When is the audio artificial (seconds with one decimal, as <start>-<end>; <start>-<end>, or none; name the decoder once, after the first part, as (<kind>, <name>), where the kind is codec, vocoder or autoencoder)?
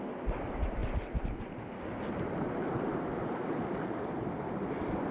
none